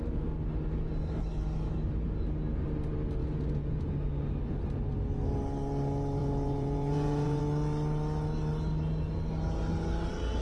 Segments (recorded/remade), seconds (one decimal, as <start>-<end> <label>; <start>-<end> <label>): 0.0-3.2 recorded; 3.2-3.9 remade; 3.9-6.2 recorded; 6.2-7.4 remade; 7.4-10.4 recorded

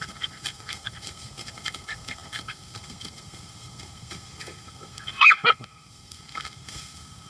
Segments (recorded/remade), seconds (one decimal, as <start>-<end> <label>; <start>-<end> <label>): 0.0-7.3 remade

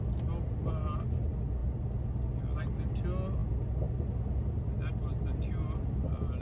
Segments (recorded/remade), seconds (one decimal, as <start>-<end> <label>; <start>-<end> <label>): 0.0-6.4 recorded

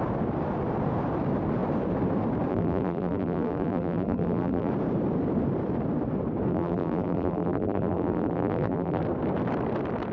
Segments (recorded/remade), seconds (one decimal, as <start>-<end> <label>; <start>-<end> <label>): 0.0-2.5 recorded; 2.5-4.7 remade; 4.7-6.5 recorded; 6.5-9.0 remade; 9.0-10.1 recorded

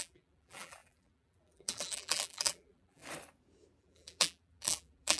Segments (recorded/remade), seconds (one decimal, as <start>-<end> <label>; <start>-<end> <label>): 0.0-3.0 remade; 3.0-3.8 recorded; 3.8-5.2 remade